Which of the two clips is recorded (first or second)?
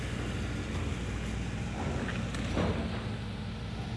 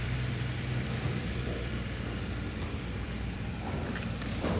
first